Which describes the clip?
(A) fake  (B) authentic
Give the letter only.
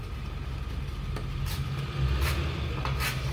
B